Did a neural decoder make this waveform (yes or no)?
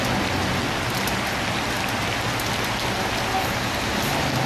no